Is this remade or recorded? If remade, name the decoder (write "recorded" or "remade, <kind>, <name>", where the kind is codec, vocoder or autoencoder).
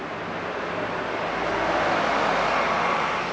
recorded